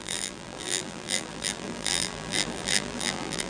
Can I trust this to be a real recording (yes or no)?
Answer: no